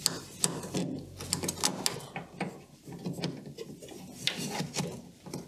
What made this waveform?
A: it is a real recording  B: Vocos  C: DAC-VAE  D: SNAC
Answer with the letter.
A